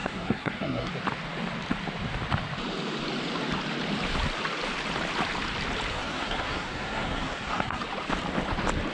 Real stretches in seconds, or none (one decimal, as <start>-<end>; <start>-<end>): 0.9-5.9; 7.8-8.9